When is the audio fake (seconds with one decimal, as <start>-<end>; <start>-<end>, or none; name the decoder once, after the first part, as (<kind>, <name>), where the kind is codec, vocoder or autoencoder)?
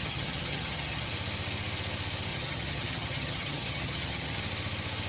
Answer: 0.0-1.1 (vocoder, HiFi-GAN); 2.3-4.4